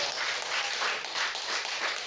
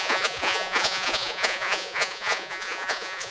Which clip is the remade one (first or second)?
second